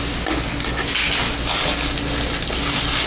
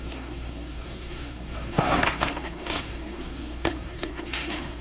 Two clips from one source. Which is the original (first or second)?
first